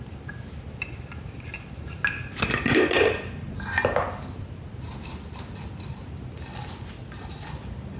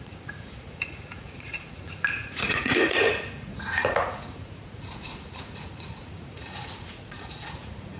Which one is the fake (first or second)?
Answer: second